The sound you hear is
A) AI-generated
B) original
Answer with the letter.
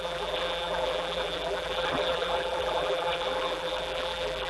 A